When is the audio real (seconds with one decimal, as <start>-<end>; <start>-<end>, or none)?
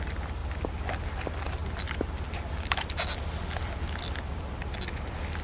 0.0-5.4